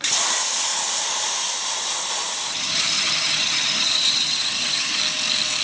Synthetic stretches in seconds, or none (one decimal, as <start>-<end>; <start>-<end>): 2.5-5.0